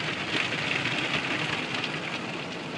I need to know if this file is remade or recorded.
recorded